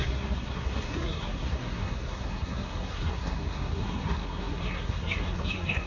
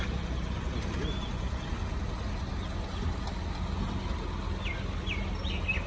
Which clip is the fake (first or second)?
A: first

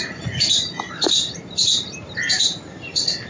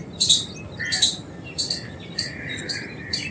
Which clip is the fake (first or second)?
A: first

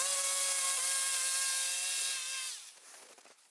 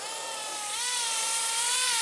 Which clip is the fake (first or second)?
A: second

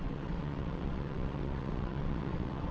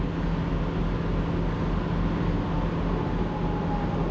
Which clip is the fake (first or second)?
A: first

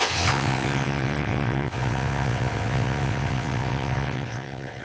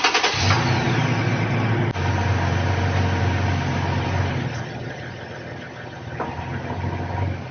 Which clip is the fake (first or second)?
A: first